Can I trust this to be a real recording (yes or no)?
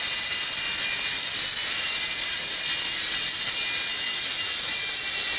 yes